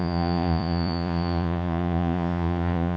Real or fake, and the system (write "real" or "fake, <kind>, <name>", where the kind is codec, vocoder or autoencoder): fake, vocoder, Vocos